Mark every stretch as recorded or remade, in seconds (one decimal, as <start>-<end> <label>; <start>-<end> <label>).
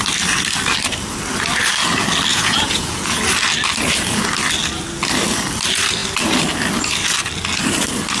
0.0-2.3 recorded; 2.3-3.2 remade; 3.2-8.2 recorded